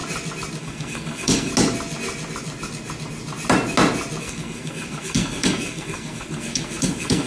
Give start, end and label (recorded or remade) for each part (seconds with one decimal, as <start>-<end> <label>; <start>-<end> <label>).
0.0-0.6 recorded; 0.6-1.5 remade; 1.5-4.2 recorded; 4.2-7.3 remade